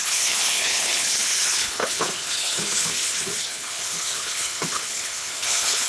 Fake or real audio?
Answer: fake